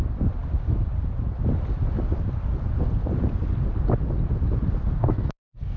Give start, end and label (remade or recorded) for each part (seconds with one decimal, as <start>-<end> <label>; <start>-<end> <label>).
0.0-5.0 recorded; 5.0-5.8 remade